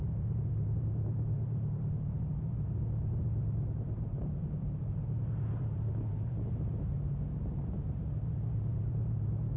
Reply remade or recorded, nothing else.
remade